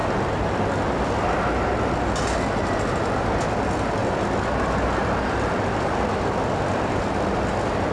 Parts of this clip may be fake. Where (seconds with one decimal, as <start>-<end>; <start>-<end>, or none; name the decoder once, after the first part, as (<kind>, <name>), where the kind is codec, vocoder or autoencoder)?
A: none